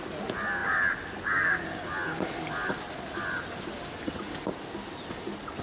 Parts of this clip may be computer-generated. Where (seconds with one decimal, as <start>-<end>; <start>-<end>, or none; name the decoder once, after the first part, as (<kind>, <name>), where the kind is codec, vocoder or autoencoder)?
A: none